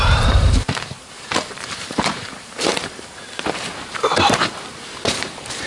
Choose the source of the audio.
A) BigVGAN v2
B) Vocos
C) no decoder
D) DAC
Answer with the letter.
A